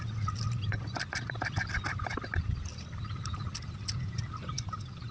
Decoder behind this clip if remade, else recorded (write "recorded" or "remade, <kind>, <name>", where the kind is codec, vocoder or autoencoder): recorded